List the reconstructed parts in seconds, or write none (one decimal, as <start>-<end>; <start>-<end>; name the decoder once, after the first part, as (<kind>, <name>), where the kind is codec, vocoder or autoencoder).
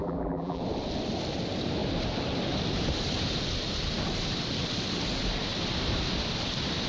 0.0-0.6 (vocoder, BigVGAN v2)